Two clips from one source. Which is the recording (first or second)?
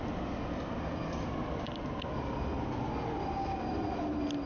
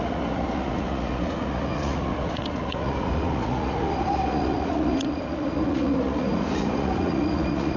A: first